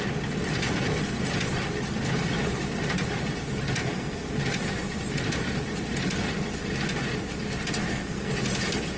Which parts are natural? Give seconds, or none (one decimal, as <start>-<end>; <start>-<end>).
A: 0.0-3.8; 4.4-7.8; 8.3-9.0